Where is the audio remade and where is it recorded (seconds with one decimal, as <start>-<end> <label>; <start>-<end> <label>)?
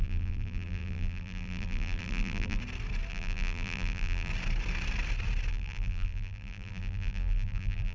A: 0.0-2.6 remade; 2.6-3.1 recorded; 3.1-4.3 remade; 4.3-5.5 recorded; 5.5-7.9 remade